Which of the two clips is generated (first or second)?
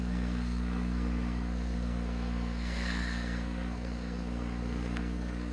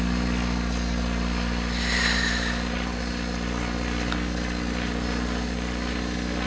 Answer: first